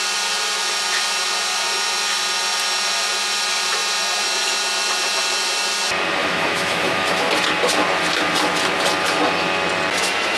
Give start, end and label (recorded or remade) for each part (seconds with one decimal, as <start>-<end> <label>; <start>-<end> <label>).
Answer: 0.0-6.2 recorded; 6.2-7.3 remade; 7.3-10.4 recorded